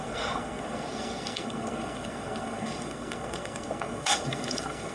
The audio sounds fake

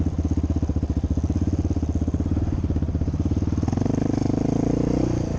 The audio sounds real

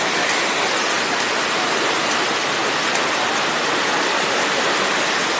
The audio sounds real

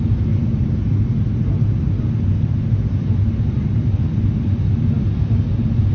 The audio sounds real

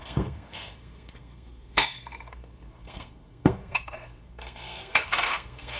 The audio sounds fake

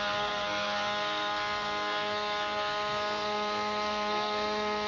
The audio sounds fake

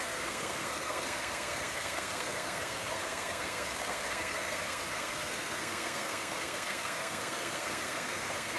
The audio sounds fake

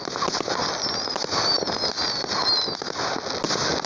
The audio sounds real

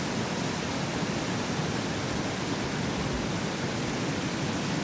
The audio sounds real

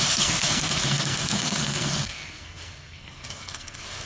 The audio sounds fake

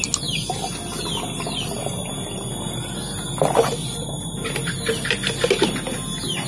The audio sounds real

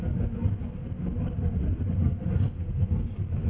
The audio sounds real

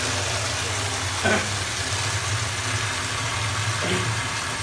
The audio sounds real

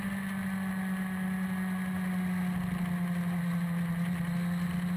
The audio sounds real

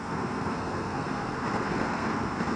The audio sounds fake